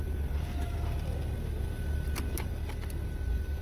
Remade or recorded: recorded